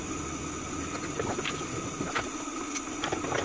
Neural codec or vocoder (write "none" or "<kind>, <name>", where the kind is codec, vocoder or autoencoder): none